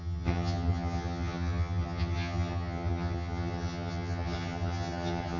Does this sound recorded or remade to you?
remade